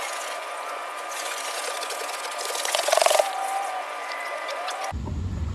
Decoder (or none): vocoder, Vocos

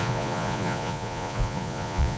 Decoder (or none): vocoder, Vocos